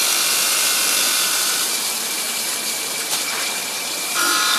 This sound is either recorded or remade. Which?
remade